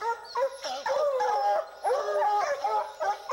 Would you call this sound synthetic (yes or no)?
no